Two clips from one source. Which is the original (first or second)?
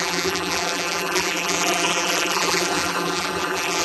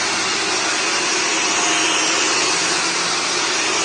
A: second